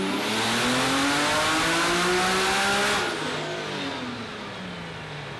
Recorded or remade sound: recorded